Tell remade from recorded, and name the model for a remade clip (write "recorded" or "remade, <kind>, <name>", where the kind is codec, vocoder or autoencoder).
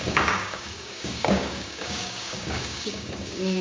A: remade, codec, DAC